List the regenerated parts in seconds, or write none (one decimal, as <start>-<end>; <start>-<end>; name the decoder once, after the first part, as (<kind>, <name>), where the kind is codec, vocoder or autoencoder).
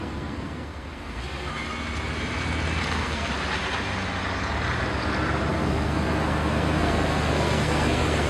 0.0-1.5 (codec, SNAC); 2.9-3.3; 5.5-8.3